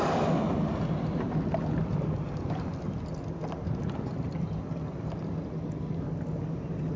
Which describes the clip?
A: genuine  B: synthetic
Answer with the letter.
A